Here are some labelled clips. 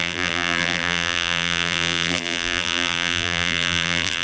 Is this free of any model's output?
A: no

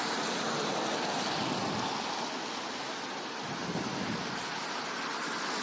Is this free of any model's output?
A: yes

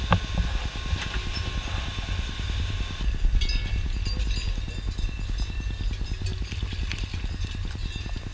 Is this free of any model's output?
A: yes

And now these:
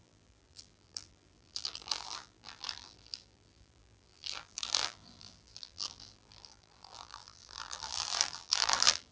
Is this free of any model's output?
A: no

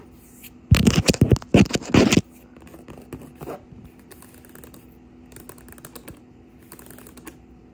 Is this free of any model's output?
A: yes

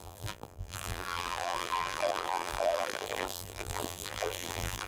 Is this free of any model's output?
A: no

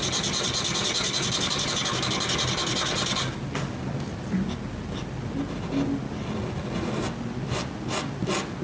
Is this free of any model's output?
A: yes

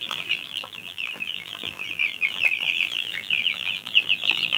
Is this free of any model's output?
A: no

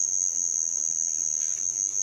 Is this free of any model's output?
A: yes